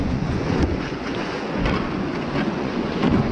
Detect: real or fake fake